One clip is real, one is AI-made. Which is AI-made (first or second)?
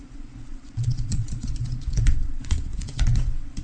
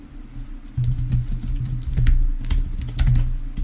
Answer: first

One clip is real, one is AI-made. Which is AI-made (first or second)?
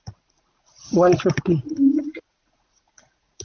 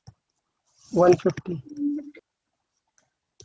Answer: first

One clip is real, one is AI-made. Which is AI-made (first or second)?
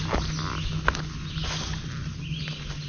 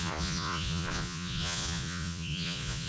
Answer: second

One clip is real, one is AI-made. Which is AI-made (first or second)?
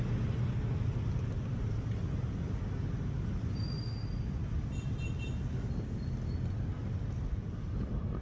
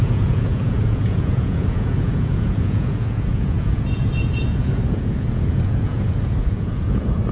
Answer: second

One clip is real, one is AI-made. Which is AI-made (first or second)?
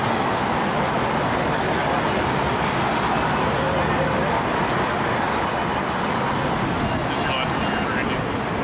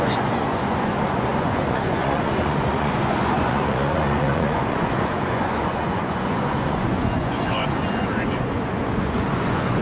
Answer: second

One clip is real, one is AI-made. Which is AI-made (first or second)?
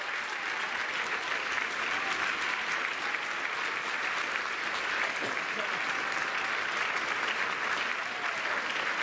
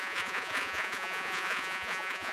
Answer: second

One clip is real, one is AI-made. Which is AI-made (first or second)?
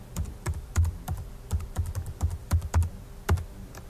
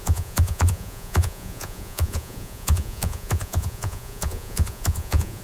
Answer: second